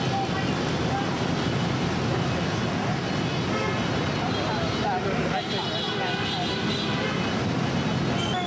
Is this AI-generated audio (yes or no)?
no